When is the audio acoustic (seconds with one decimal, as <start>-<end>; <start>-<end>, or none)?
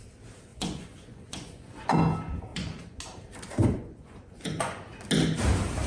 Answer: 0.0-0.5; 2.0-2.5; 3.0-3.6; 4.8-5.9